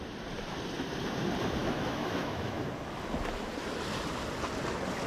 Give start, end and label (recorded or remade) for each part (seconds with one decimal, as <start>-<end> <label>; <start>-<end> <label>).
0.0-1.6 recorded; 1.6-2.6 remade; 2.6-5.1 recorded